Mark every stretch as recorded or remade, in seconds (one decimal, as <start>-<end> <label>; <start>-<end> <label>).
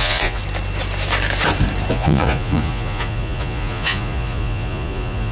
0.0-0.4 remade; 0.4-1.9 recorded; 1.9-5.3 remade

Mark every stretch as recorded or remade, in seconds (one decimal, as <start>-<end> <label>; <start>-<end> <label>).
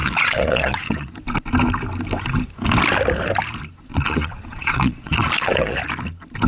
0.0-1.1 remade; 1.1-3.9 recorded; 3.9-5.8 remade; 5.8-6.5 recorded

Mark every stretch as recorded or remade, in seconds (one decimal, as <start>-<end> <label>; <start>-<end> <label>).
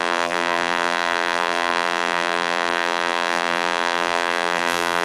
0.0-5.0 remade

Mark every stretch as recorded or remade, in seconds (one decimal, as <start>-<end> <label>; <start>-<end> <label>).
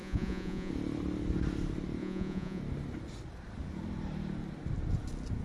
0.0-0.7 remade; 0.7-2.0 recorded; 2.0-2.6 remade; 2.6-5.4 recorded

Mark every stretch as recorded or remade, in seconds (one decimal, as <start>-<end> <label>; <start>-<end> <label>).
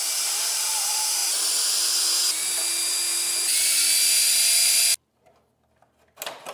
0.0-6.5 recorded